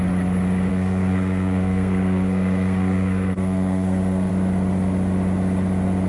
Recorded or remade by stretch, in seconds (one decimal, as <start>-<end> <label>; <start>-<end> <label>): 0.0-0.7 recorded; 0.7-4.3 remade; 4.3-6.1 recorded